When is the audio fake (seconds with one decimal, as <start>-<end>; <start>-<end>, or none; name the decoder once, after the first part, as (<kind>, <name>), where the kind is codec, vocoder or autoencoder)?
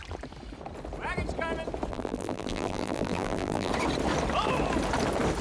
1.9-3.7 (vocoder, BigVGAN v2)